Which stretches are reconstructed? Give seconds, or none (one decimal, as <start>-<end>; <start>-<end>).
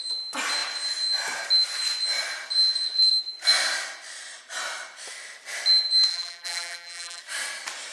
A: 6.1-7.2